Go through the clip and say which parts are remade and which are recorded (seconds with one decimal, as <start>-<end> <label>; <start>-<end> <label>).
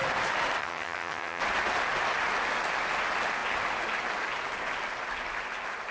0.0-0.6 recorded; 0.6-1.4 remade; 1.4-5.9 recorded